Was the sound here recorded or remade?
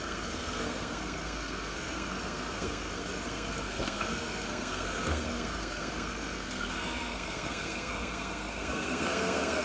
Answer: remade